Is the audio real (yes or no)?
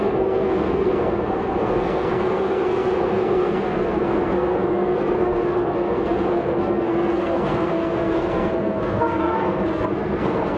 no